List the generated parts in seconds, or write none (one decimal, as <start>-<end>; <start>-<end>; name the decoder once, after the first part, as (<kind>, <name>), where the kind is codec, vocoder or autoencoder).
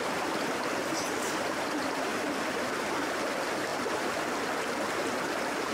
3.7-4.4 (vocoder, BigVGAN v2)